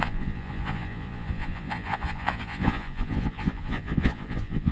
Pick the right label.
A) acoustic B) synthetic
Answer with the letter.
B